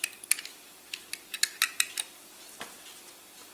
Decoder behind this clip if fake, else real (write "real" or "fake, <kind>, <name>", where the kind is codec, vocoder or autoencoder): real